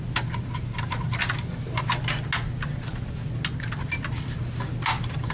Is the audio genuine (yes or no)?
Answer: yes